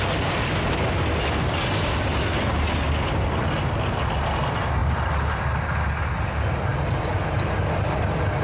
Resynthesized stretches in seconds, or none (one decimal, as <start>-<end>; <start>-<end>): none